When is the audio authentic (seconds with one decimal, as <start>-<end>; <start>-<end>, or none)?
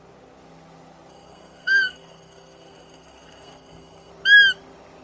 0.0-1.1; 4.1-5.0